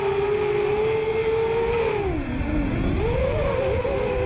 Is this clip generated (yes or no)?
no